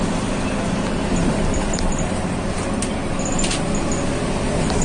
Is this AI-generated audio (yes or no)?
no